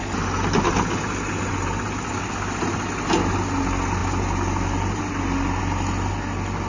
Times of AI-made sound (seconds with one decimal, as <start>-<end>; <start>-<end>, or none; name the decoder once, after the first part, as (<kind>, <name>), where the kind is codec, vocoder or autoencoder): none